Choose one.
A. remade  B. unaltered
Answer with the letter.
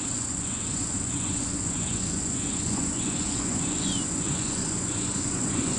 A